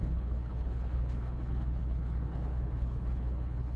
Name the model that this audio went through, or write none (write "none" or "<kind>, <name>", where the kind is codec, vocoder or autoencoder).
codec, HILCodec